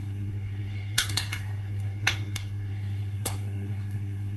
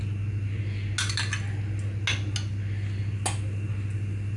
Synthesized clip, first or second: first